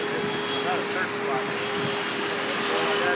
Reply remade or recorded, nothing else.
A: recorded